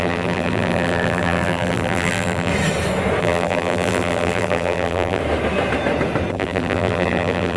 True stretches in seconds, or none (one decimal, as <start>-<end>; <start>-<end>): 2.5-3.2; 5.2-6.3